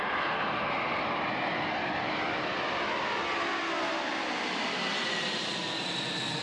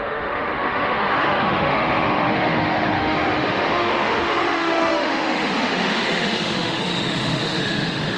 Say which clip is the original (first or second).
first